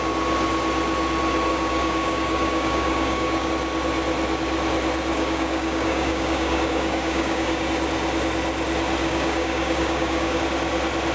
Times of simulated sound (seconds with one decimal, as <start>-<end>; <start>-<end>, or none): 1.5-3.5; 5.1-7.7; 9.0-10.4

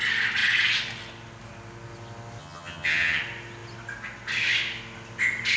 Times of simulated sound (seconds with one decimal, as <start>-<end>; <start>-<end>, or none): 2.4-3.2

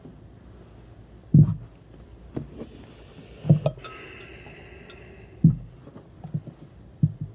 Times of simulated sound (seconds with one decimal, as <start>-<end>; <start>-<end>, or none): none

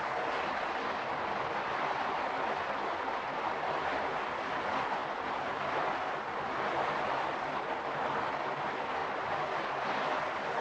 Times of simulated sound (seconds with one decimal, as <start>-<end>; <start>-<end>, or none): none

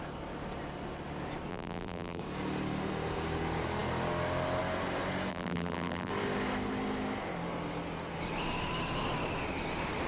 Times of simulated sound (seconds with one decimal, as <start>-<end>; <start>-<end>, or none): 1.5-2.2; 5.3-6.1

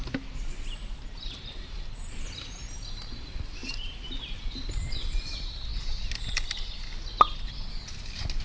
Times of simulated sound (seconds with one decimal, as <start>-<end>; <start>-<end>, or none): none

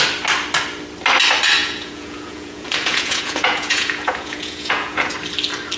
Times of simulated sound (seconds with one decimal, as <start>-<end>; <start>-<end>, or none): 1.6-5.1